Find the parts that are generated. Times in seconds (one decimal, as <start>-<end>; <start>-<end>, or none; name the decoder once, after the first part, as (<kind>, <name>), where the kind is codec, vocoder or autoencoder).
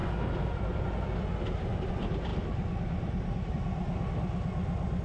none